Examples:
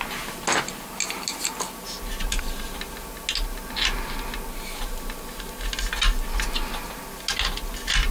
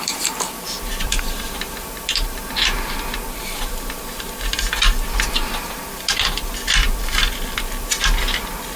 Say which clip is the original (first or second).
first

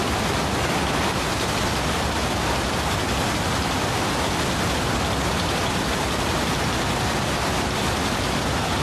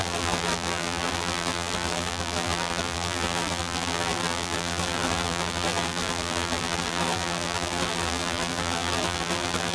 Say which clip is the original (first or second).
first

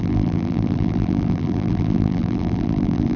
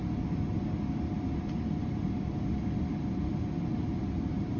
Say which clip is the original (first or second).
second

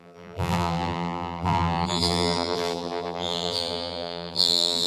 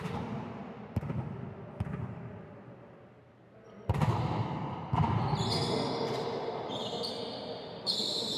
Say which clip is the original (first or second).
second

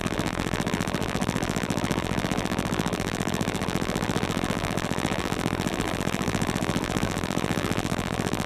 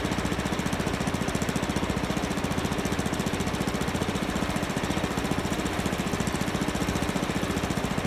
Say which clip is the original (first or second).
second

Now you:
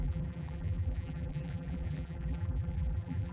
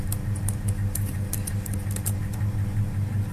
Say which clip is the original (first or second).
second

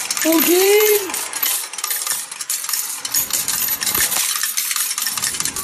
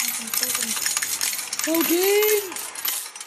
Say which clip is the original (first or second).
second